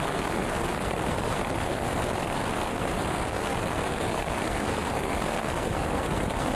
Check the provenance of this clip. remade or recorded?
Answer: remade